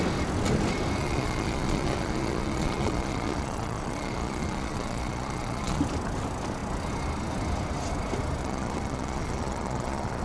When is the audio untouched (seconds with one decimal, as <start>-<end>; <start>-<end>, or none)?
0.0-1.0; 5.8-8.4

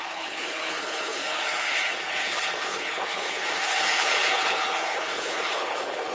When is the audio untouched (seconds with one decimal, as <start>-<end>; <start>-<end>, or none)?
none

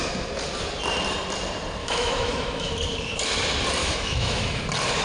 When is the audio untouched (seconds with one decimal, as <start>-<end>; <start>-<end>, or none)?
0.0-1.8; 2.7-3.8; 4.6-5.0

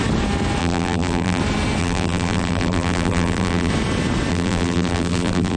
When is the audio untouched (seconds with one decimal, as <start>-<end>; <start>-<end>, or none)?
0.0-0.6; 1.4-1.8; 3.7-4.3

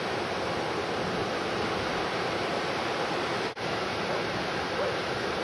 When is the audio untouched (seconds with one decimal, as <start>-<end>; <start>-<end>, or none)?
0.0-1.9

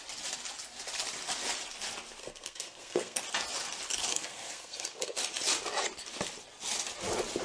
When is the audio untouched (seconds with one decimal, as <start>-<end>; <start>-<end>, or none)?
0.0-2.2; 3.2-4.1; 5.2-7.4

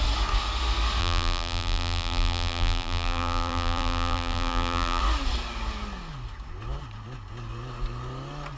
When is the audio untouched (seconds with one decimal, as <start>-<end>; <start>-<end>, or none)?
0.0-1.0; 5.0-8.6